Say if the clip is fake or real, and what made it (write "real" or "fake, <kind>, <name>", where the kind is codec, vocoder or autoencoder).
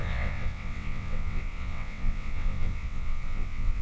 fake, vocoder, WaveNeXt